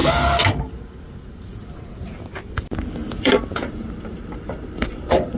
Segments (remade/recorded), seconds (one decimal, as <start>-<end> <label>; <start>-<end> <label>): 0.0-3.2 recorded; 3.2-5.4 remade